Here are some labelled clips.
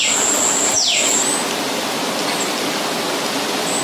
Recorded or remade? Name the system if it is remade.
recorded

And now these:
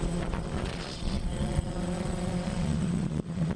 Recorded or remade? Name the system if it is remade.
remade, vocoder, Vocos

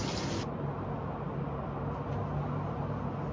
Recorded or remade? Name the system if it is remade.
recorded